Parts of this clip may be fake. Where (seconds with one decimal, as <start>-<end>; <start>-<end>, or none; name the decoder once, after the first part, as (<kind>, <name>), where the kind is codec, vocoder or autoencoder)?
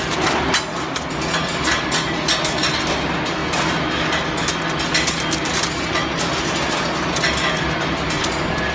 none